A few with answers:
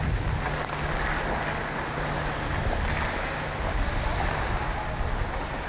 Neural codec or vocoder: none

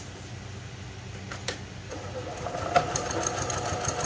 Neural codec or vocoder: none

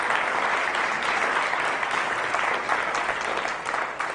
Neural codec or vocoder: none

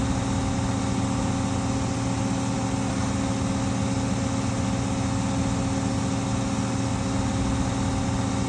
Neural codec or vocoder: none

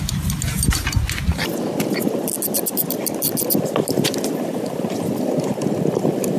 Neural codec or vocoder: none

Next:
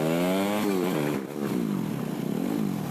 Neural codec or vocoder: none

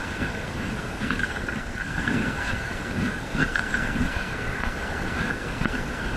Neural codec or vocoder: codec, SNAC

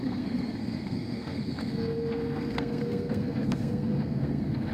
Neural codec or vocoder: codec, SNAC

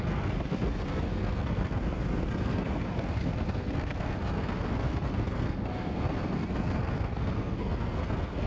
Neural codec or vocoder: codec, SNAC